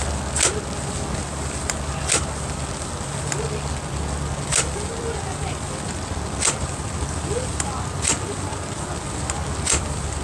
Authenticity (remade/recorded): recorded